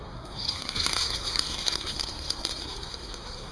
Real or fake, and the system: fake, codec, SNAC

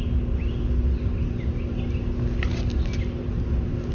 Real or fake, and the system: real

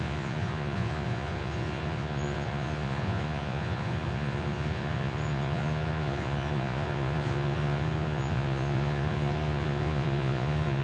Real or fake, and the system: fake, vocoder, Vocos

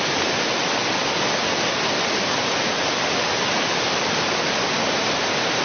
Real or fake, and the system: real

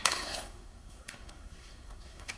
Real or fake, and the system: fake, codec, SNAC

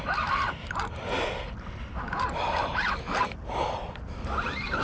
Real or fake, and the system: real